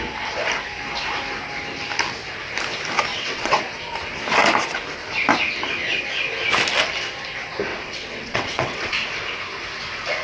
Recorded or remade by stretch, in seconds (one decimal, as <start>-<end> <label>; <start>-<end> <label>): 0.0-3.1 recorded; 3.1-3.6 remade; 3.6-7.7 recorded; 7.7-8.9 remade; 8.9-10.2 recorded

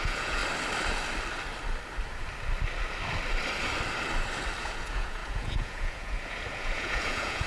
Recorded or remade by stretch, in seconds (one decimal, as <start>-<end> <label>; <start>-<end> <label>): 0.0-0.4 remade; 0.4-4.6 recorded; 4.6-7.5 remade

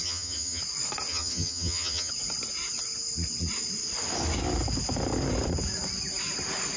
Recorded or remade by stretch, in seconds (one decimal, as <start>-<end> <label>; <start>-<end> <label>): 0.0-0.6 remade; 0.6-1.1 recorded; 1.1-2.1 remade; 2.1-6.8 recorded

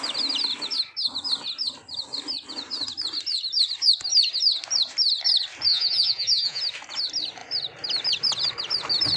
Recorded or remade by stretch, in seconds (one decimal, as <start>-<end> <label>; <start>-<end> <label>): 0.0-5.7 recorded; 5.7-6.6 remade; 6.6-9.2 recorded

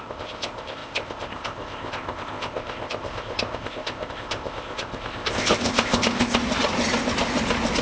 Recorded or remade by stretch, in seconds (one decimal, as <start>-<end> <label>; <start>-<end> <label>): 0.0-6.4 remade; 6.4-7.8 recorded